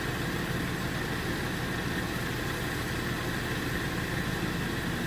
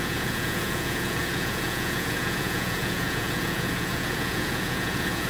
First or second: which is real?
first